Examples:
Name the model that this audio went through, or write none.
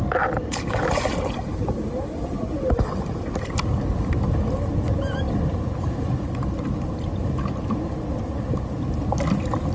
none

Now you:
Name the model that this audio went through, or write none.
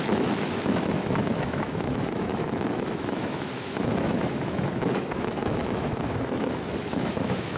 autoencoder, DAC-VAE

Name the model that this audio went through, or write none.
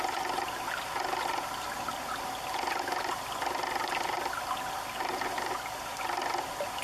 none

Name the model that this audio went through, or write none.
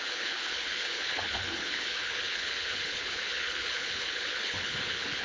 codec, HILCodec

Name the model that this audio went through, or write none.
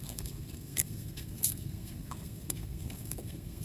codec, SNAC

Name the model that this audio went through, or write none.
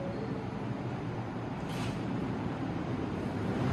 vocoder, BigVGAN v2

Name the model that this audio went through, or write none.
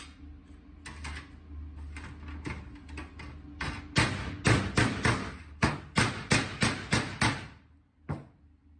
none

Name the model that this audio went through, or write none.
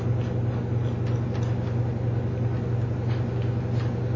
none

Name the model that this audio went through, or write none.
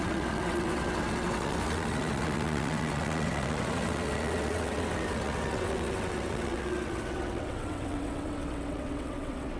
vocoder, WaveNeXt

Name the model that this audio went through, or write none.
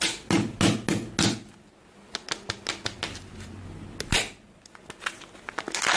none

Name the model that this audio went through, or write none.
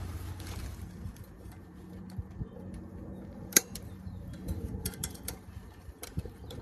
vocoder, BigVGAN v2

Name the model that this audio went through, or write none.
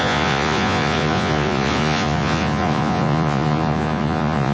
vocoder, Vocos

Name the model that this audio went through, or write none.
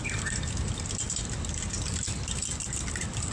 none